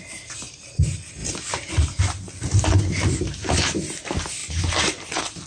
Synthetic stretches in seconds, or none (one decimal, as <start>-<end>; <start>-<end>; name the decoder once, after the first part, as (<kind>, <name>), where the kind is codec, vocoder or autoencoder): none